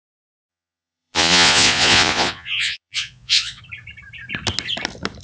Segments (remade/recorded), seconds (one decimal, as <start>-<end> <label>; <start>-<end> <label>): 0.0-0.5 recorded; 0.5-3.6 remade; 3.6-5.2 recorded